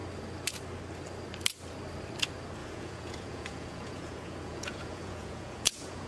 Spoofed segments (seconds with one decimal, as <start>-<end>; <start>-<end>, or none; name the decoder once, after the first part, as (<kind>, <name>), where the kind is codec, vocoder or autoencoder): 2.6-6.1 (vocoder, Vocos)